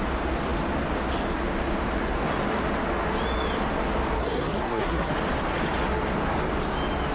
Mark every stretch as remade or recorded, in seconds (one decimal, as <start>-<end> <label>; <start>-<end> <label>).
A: 0.0-4.2 recorded; 4.2-5.1 remade; 5.1-7.1 recorded